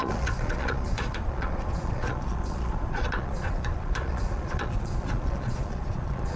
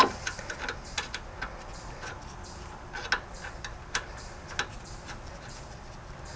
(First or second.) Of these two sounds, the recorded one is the second